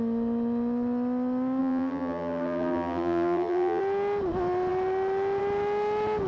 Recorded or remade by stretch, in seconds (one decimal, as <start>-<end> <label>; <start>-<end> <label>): 0.0-1.6 recorded; 1.6-3.8 remade; 3.8-6.3 recorded